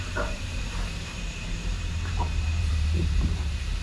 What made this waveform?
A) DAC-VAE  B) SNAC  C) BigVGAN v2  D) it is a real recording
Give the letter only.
C